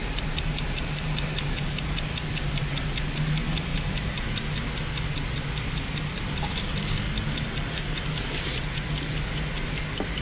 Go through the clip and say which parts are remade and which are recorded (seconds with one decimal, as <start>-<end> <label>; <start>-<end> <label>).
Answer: 0.0-2.0 remade; 2.0-10.2 recorded